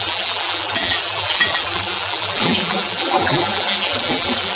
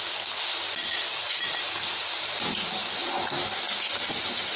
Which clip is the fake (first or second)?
first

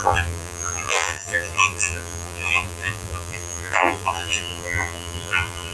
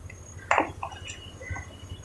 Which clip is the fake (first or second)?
first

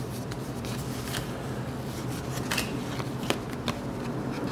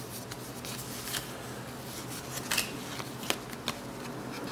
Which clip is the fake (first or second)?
first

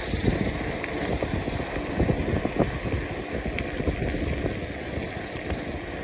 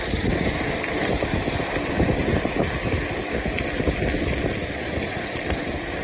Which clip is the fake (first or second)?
second